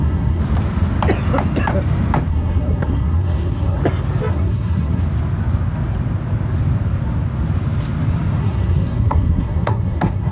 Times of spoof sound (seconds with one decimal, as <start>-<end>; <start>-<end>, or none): 0.0-0.4; 2.3-3.8; 4.3-5.0; 8.4-10.3